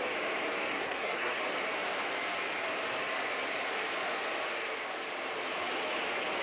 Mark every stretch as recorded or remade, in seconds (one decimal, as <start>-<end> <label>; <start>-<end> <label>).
0.0-0.7 recorded; 0.7-1.4 remade; 1.4-6.4 recorded

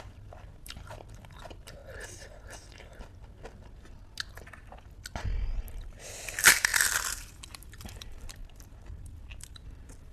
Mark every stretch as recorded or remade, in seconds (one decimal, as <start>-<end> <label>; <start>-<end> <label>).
0.0-1.8 remade; 1.8-5.9 recorded; 5.9-8.4 remade; 8.4-9.0 recorded; 9.0-10.1 remade

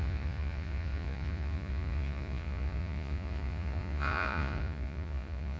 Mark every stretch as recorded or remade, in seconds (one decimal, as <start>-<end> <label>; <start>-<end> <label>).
0.0-5.6 remade

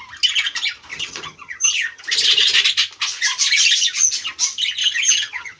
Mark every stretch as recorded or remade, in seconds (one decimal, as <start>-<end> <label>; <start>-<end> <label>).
0.0-0.9 recorded; 0.9-2.0 remade; 2.0-4.8 recorded; 4.8-5.6 remade